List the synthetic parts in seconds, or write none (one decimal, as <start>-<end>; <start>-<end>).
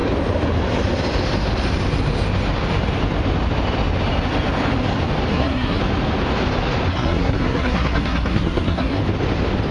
5.3-5.8; 6.9-9.0